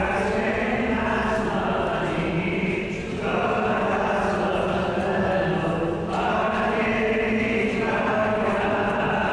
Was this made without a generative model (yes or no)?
yes